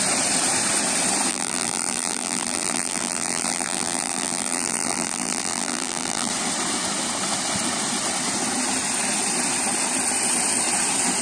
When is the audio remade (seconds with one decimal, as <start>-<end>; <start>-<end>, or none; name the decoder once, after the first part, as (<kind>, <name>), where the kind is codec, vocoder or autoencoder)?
1.3-6.3 (vocoder, BigVGAN v2)